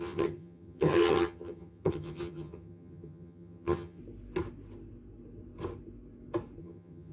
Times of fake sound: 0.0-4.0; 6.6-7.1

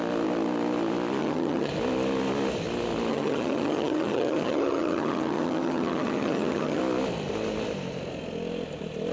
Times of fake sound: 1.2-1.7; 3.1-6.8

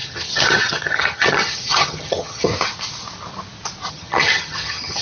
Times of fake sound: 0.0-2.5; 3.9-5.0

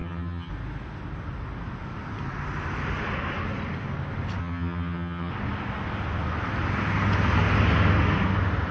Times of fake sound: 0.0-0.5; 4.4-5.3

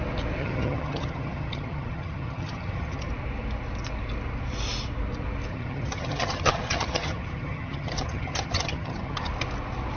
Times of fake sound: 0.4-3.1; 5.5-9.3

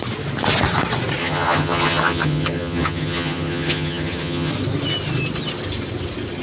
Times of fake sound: 1.2-4.5

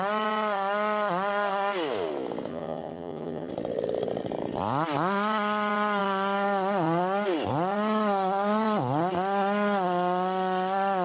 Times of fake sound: 2.5-3.5